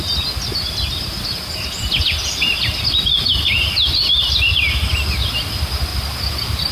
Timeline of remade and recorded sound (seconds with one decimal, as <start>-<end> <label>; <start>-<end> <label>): 0.0-4.5 recorded; 4.5-5.3 remade; 5.3-5.9 recorded; 5.9-6.7 remade